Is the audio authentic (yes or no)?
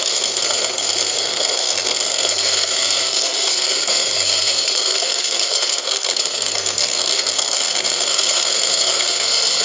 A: no